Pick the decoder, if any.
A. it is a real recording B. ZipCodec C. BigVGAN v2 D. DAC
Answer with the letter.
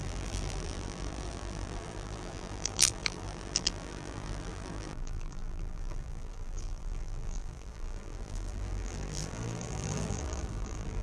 C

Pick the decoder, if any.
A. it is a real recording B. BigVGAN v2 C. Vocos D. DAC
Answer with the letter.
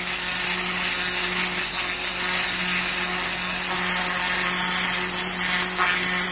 A